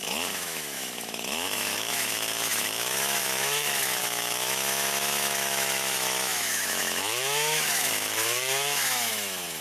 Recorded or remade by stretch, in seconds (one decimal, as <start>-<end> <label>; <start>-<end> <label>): 0.0-9.6 remade